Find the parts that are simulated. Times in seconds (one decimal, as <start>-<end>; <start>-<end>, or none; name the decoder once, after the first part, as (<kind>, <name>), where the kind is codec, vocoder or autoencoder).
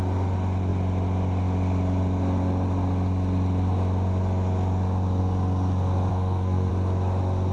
6.1-6.7 (codec, SNAC)